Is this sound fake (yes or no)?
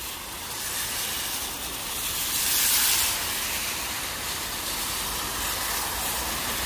no